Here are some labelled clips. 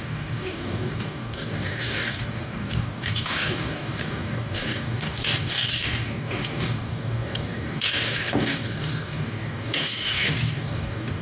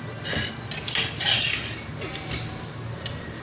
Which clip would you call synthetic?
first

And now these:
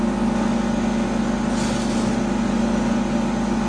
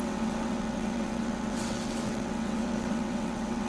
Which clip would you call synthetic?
second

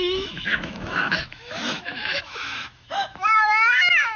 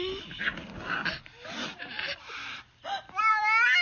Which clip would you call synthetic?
first